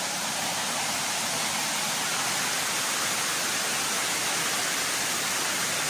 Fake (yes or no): no